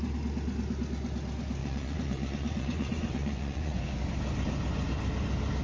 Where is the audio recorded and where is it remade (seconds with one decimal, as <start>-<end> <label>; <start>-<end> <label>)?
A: 0.0-1.6 recorded; 1.6-3.8 remade; 3.8-5.6 recorded